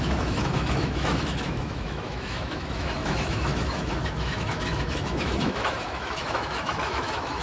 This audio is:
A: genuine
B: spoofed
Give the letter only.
B